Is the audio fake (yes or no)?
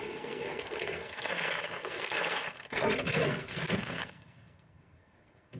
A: yes